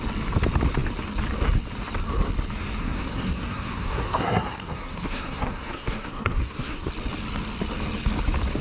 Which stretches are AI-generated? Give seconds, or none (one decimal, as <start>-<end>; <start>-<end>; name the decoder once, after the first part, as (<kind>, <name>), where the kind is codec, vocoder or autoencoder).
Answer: 2.8-6.9 (codec, SNAC)